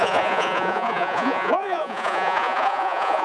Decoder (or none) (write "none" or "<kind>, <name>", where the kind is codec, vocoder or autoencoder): vocoder, Vocos